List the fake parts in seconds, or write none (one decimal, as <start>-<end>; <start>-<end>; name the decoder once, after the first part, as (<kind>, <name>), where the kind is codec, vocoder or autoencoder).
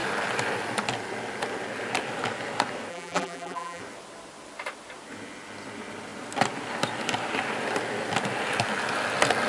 2.9-3.8 (vocoder, BigVGAN v2)